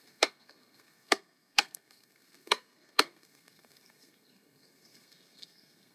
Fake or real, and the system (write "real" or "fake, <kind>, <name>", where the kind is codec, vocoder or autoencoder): fake, codec, SNAC